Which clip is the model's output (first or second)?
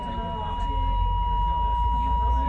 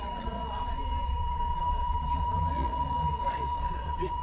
second